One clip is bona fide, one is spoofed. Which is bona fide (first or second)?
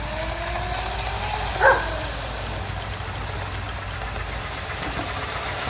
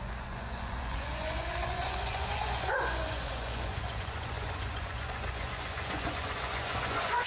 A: first